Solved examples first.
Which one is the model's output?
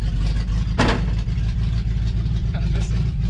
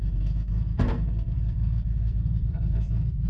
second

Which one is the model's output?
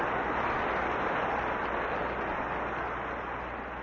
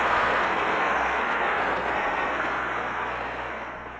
second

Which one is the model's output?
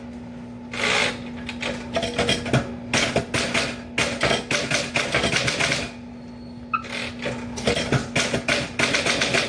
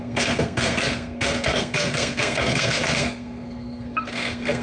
second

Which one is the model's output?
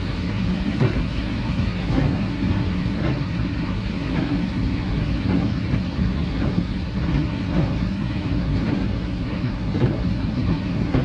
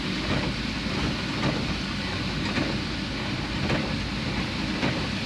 first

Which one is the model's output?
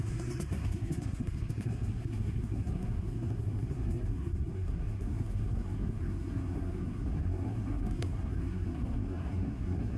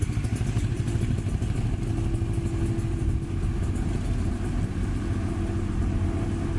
first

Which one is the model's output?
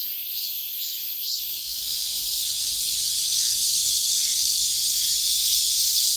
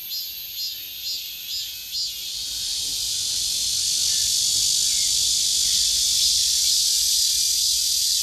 first